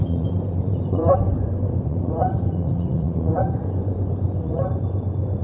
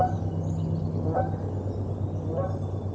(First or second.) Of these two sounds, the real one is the second